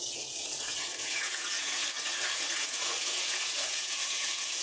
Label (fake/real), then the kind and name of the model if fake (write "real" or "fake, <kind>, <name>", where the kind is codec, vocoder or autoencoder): fake, vocoder, Vocos